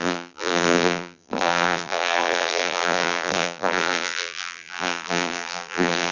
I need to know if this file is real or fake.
fake